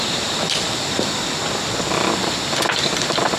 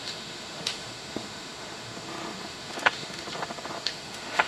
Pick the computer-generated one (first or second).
second